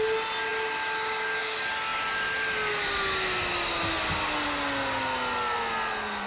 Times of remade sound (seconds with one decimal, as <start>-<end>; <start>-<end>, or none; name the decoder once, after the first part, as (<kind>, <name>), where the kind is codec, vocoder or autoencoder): none